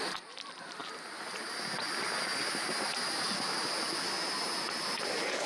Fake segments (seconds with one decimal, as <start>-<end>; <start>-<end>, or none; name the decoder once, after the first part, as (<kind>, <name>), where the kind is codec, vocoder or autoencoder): none